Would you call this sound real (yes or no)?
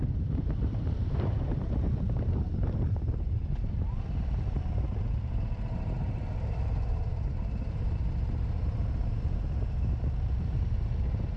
no